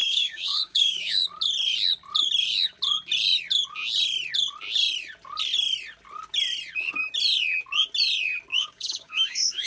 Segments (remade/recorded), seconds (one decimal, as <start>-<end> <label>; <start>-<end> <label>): 0.0-1.3 remade; 1.3-8.5 recorded; 8.5-9.7 remade